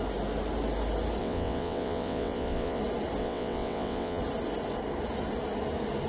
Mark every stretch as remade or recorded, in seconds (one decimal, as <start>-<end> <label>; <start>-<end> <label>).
0.0-1.2 recorded; 1.2-2.8 remade; 2.8-3.2 recorded; 3.2-4.2 remade; 4.2-6.1 recorded

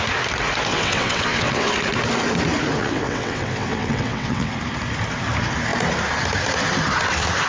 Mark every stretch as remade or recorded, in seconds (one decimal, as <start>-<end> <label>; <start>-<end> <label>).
0.0-0.7 recorded; 0.7-1.7 remade; 1.7-2.8 recorded; 2.8-4.5 remade; 4.5-7.5 recorded